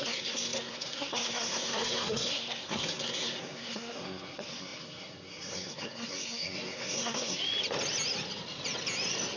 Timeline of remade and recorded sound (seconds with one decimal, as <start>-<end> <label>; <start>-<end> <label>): 0.0-7.4 remade; 7.4-9.4 recorded